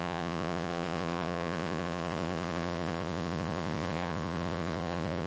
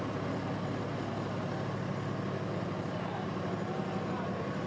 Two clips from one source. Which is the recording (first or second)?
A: second